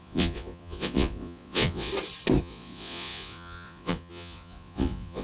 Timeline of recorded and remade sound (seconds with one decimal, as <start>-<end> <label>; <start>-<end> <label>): 0.0-1.9 remade; 1.9-2.4 recorded; 2.4-5.2 remade